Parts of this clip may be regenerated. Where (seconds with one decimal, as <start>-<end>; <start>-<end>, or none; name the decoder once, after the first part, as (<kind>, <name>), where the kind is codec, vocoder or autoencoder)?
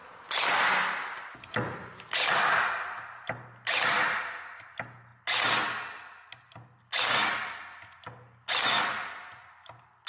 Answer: none